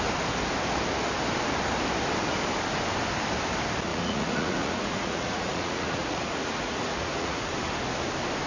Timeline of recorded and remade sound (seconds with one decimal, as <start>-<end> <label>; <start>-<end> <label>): 0.0-3.9 recorded; 3.9-7.5 remade; 7.5-8.5 recorded